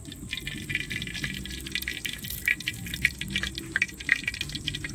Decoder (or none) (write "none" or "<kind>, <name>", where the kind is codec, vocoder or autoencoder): none